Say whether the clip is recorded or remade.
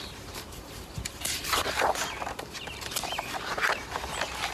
remade